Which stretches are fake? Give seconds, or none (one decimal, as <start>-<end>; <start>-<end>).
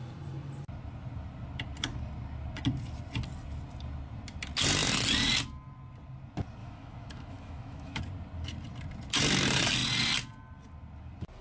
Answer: 6.6-8.0